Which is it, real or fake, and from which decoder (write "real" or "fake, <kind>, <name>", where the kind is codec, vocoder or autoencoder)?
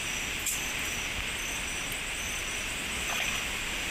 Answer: real